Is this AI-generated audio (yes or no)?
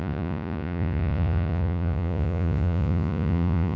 yes